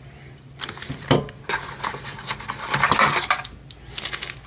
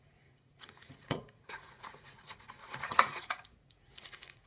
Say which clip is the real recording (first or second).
first